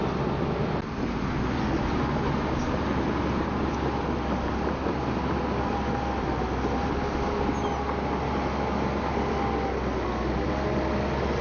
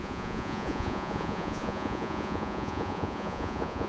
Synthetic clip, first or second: second